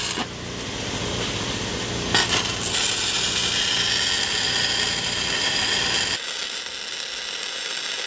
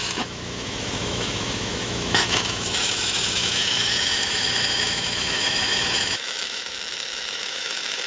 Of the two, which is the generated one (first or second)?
second